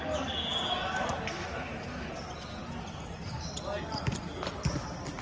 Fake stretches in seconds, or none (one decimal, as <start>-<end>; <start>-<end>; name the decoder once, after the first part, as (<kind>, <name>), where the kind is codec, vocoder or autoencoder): 1.3-2.1 (autoencoder, DAC-VAE)